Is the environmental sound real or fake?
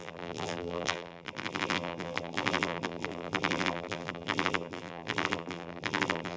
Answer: fake